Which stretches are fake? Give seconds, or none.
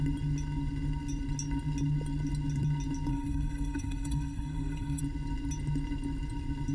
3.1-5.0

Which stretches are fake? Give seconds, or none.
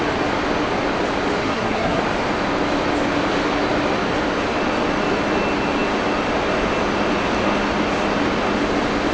1.4-2.0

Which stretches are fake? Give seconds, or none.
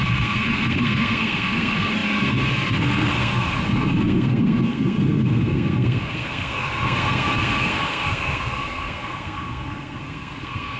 0.0-10.8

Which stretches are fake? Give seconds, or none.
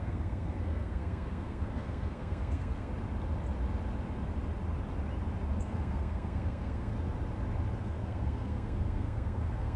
0.0-2.9; 5.6-6.9; 7.8-9.8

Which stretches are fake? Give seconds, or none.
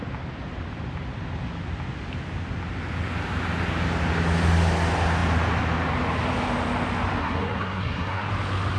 7.2-8.3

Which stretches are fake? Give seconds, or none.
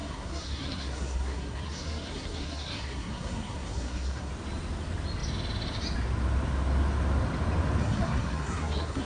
0.0-4.3; 7.8-9.1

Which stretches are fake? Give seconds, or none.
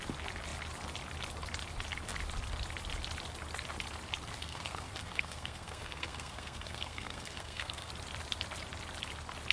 4.4-7.9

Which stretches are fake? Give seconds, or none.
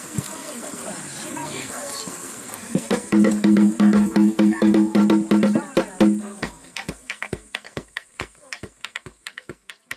0.0-0.8; 1.3-5.0; 6.2-10.0